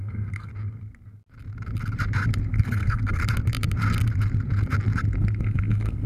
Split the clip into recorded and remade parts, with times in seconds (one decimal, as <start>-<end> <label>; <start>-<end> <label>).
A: 0.0-0.5 remade; 0.5-2.5 recorded; 2.5-3.2 remade; 3.2-5.4 recorded; 5.4-6.1 remade